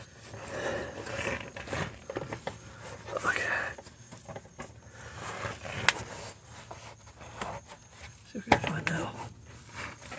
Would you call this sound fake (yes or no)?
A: no